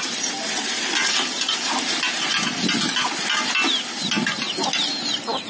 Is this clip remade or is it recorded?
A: recorded